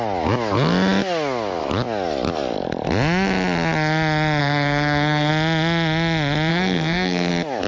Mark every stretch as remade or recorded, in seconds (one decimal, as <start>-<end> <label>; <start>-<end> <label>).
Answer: 0.0-4.4 recorded; 4.4-5.3 remade; 5.3-6.5 recorded; 6.5-7.3 remade; 7.3-7.7 recorded